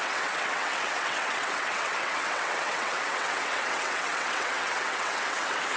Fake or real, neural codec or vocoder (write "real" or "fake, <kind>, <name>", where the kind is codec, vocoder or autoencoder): fake, vocoder, WaveNeXt